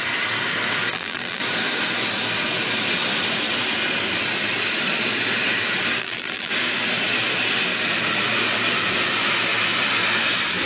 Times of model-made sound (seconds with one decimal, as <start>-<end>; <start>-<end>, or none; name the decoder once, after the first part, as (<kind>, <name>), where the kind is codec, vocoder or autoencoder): 0.9-1.4 (vocoder, BigVGAN v2); 6.0-6.5